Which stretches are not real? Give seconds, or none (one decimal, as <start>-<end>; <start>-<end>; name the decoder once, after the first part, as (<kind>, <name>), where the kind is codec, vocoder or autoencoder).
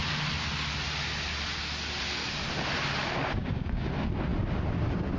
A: 3.4-3.9 (codec, DAC)